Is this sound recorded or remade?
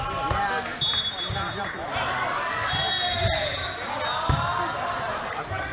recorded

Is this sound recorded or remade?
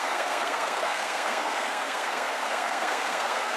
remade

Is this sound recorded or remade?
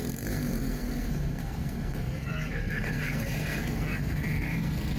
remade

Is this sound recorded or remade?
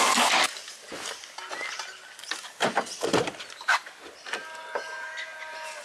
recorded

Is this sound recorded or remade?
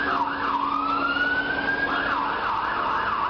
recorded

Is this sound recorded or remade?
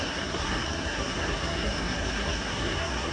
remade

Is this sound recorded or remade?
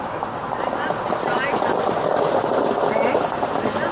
recorded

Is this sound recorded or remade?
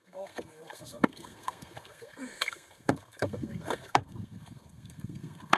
remade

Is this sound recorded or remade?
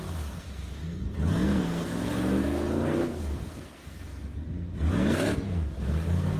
remade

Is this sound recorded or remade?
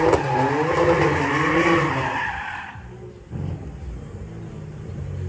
recorded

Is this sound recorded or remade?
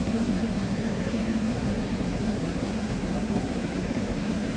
remade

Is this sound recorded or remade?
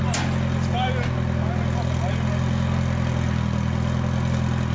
recorded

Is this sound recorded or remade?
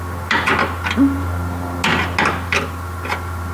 recorded